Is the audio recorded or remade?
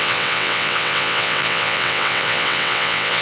remade